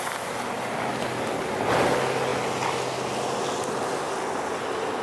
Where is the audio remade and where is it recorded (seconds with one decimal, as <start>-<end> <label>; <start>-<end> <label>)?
0.0-5.0 recorded